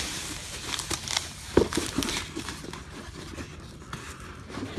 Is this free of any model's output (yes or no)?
yes